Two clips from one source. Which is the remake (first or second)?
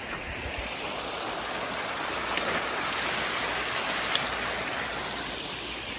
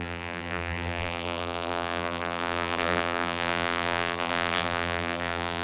second